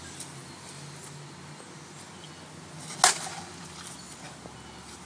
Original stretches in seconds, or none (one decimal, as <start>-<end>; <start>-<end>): 0.0-5.1